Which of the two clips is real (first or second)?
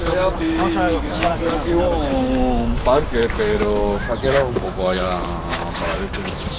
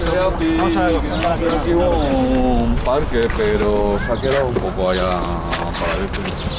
second